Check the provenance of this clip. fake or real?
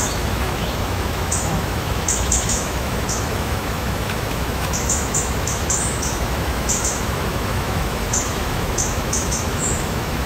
fake